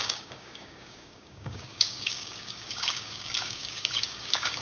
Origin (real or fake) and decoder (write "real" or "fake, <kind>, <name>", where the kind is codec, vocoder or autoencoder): fake, codec, DAC